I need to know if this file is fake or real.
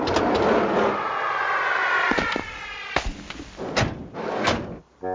real